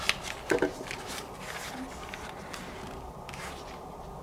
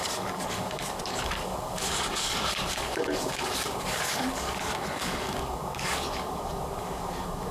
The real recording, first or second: first